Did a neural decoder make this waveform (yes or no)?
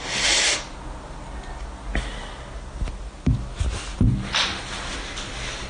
no